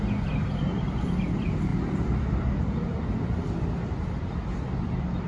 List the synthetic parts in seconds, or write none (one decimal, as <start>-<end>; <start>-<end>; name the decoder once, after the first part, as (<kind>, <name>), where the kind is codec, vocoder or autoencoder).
none